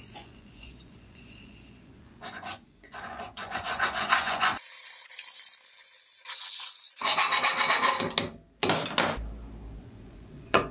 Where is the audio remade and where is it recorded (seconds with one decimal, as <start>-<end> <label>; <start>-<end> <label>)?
0.0-4.5 remade; 4.5-5.7 recorded; 5.7-7.1 remade; 7.1-9.8 recorded; 9.8-10.7 remade